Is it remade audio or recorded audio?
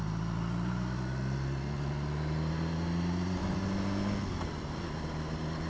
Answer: recorded